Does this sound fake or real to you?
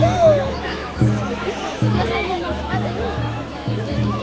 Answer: fake